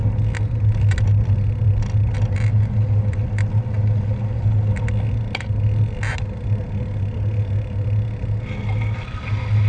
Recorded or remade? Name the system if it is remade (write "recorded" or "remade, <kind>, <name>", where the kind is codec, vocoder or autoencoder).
recorded